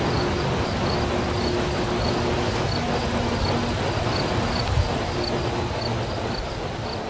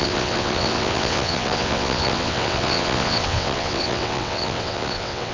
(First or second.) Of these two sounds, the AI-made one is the second